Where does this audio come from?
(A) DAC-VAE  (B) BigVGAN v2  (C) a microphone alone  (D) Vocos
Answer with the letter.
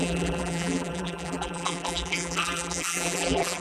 B